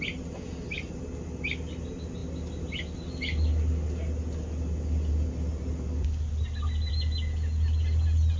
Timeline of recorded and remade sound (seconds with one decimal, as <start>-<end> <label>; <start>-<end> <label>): 0.0-8.4 recorded